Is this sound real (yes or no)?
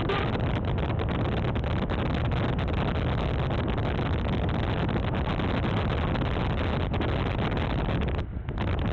yes